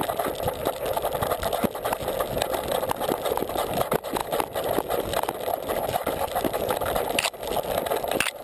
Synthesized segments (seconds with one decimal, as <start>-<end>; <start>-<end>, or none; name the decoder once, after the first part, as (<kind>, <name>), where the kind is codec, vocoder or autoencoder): none